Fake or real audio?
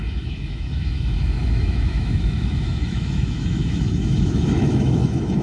fake